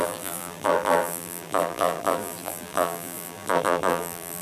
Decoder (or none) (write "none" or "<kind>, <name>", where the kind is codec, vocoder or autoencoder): vocoder, BigVGAN v2